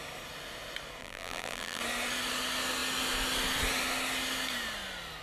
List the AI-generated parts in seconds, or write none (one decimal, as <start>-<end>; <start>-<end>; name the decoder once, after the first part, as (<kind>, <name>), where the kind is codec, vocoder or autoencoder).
1.0-1.8 (vocoder, BigVGAN v2)